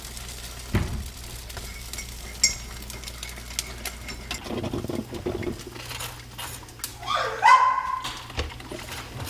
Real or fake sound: real